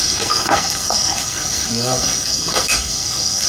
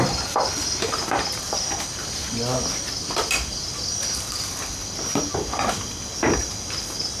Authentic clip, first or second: second